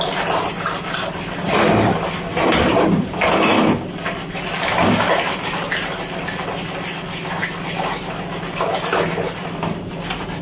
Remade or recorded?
recorded